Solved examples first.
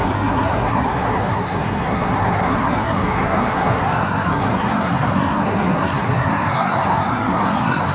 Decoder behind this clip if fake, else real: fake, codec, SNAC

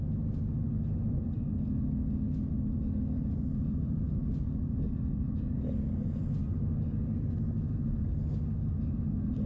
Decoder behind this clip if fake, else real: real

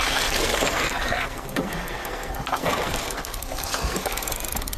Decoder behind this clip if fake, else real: fake, codec, SNAC